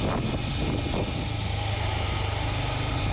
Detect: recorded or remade recorded